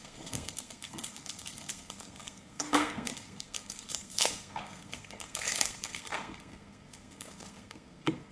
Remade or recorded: remade